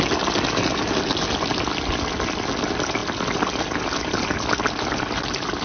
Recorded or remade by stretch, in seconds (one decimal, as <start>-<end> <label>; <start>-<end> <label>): 0.0-5.6 recorded